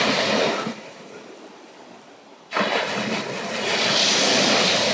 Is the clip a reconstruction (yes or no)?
no